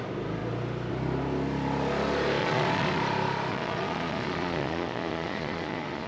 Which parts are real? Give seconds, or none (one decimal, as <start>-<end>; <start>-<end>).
0.0-2.4; 3.0-3.5